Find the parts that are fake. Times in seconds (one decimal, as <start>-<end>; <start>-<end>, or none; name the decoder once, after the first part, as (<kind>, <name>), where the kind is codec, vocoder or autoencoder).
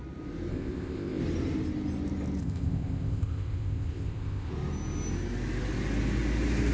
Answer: 0.5-1.2 (codec, ZipCodec); 2.4-4.5